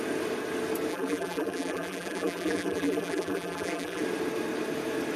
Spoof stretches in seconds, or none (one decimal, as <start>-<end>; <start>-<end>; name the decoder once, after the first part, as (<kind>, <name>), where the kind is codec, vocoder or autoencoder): 0.9-4.0 (vocoder, BigVGAN v2)